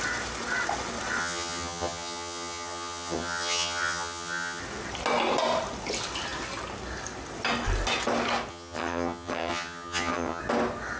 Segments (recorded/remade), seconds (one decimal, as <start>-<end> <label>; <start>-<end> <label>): 0.0-1.2 recorded; 1.2-4.6 remade; 4.6-8.5 recorded; 8.5-10.4 remade; 10.4-11.0 recorded